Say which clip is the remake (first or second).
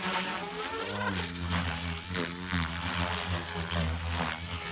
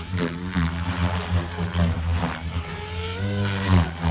second